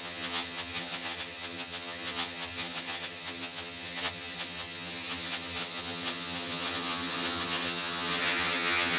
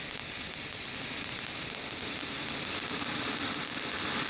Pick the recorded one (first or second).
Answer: second